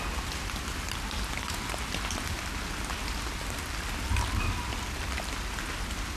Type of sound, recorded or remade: recorded